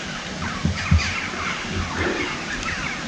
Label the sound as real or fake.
real